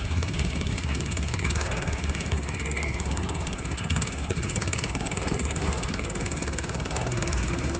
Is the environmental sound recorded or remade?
remade